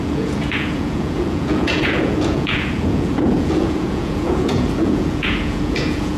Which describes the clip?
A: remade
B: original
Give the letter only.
A